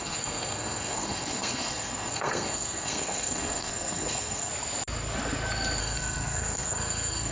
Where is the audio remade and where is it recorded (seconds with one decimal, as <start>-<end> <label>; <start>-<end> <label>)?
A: 0.0-4.5 remade; 4.5-5.8 recorded; 5.8-7.3 remade